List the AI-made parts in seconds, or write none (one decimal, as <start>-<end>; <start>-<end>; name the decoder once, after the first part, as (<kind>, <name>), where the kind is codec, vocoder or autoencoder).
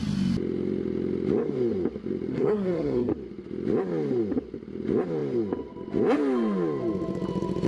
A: 2.3-3.1 (codec, SNAC)